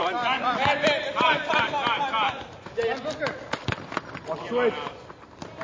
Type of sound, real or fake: real